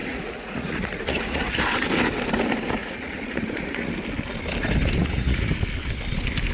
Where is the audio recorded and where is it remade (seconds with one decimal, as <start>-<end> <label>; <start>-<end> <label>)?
0.0-1.6 remade; 1.6-2.8 recorded; 2.8-3.9 remade; 3.9-5.0 recorded; 5.0-5.5 remade; 5.5-6.5 recorded